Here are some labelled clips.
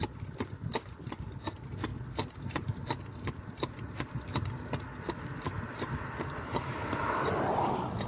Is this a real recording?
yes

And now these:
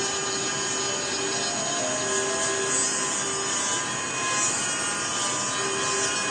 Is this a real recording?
yes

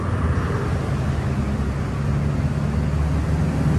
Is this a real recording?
yes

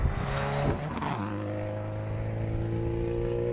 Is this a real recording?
yes